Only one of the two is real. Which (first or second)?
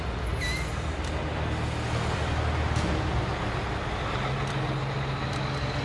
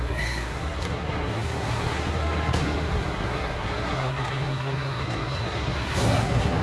first